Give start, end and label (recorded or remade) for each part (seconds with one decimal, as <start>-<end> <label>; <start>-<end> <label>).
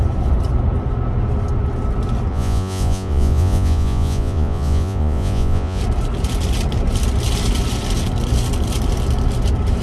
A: 0.0-2.3 recorded; 2.3-5.8 remade; 5.8-9.8 recorded